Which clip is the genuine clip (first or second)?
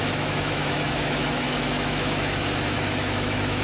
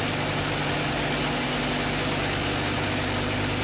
second